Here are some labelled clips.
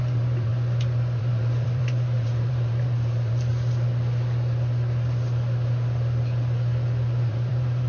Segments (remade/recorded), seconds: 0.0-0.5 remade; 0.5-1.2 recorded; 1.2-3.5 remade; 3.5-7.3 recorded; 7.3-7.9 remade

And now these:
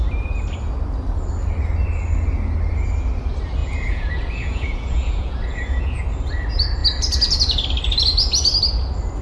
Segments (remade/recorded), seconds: 0.0-3.6 recorded; 3.6-6.0 remade; 6.0-9.2 recorded